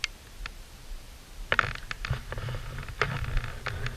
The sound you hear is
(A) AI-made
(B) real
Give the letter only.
B